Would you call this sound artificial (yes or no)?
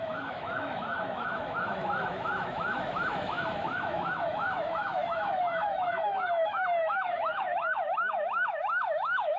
yes